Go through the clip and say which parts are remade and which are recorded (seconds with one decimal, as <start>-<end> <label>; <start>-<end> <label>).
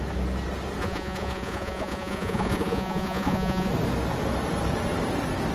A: 0.0-0.8 recorded; 0.8-3.7 remade; 3.7-5.5 recorded